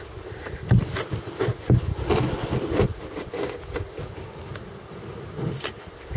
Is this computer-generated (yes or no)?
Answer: no